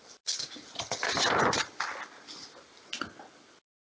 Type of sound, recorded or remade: recorded